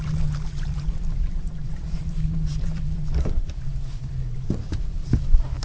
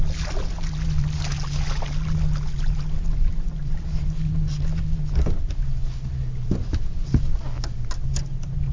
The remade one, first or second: first